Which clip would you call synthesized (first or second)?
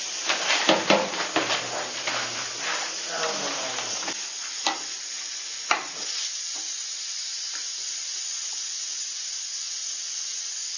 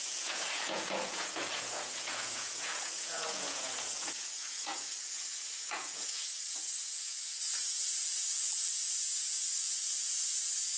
second